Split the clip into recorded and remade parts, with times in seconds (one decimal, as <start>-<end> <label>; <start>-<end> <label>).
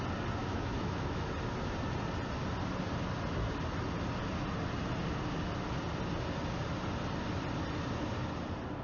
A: 0.0-0.4 recorded; 0.4-1.3 remade; 1.3-8.8 recorded